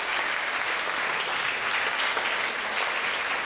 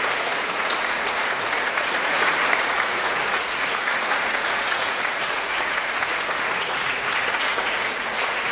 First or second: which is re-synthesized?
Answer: second